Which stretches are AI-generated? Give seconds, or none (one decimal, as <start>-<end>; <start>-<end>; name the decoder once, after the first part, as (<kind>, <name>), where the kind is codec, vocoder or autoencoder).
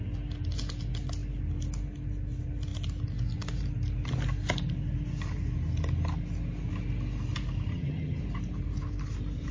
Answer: 7.7-8.2 (vocoder, HiFi-GAN)